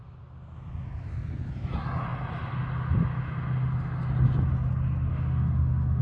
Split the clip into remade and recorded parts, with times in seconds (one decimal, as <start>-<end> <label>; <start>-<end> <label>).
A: 0.0-5.1 recorded; 5.1-6.0 remade